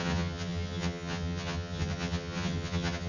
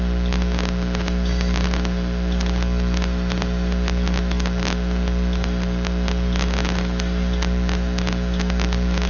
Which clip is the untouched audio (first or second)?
second